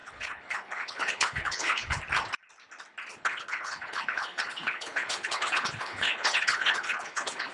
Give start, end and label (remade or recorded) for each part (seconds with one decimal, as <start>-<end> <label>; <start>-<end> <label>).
0.0-2.0 remade; 2.0-3.1 recorded; 3.1-7.5 remade